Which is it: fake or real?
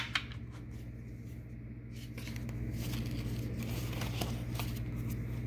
real